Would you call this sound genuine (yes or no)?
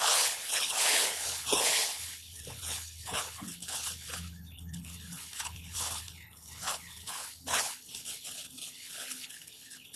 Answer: no